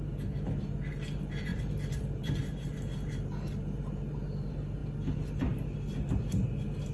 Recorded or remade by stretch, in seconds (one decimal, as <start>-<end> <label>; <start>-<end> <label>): 0.0-1.5 recorded; 1.5-2.7 remade; 2.7-6.9 recorded